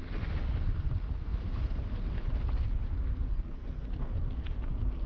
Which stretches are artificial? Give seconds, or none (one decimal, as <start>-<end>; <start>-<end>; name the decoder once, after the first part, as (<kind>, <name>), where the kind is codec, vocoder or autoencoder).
3.3-4.1 (codec, SNAC)